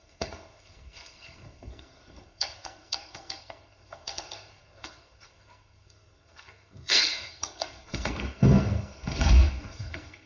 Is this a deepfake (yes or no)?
yes